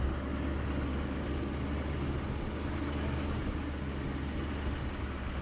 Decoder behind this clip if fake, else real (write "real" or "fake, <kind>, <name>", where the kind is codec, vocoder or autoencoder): real